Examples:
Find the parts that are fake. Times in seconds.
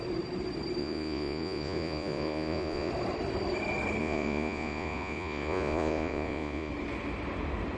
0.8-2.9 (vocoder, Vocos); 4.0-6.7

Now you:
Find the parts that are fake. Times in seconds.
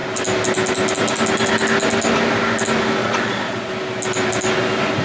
3.0-3.7 (vocoder, Vocos)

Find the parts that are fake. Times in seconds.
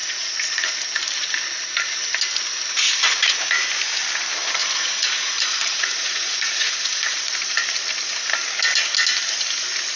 0.0-0.7 (vocoder, Vocos); 4.6-7.4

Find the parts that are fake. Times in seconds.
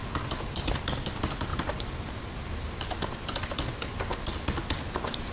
none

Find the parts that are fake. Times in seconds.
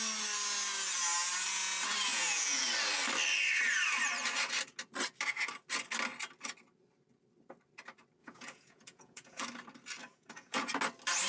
2.1-2.7 (vocoder, Vocos); 8.2-9.4; 10.0-10.7